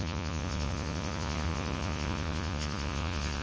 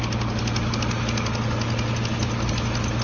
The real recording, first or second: second